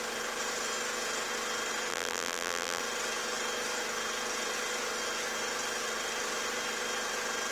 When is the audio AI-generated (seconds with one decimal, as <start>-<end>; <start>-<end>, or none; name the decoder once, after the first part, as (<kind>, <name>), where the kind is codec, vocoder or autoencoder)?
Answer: 1.9-2.8 (vocoder, BigVGAN v2)